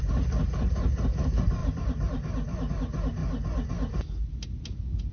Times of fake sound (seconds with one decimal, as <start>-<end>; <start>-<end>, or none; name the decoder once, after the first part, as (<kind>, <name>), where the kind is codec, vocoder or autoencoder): 1.6-2.7 (vocoder, BigVGAN v2)